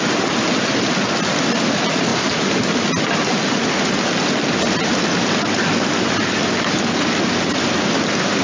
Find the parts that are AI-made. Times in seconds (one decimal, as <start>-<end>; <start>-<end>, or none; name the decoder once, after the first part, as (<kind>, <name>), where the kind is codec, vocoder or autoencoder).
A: none